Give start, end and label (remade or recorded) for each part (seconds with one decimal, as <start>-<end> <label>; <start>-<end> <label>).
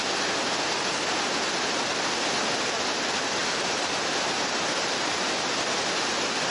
0.0-3.4 recorded; 3.4-5.2 remade; 5.2-6.5 recorded